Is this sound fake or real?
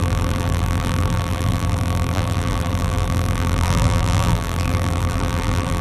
fake